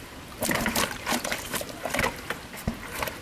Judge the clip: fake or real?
fake